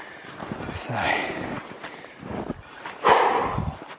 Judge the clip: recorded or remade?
recorded